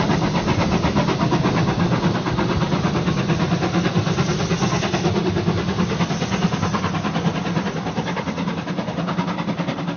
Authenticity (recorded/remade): recorded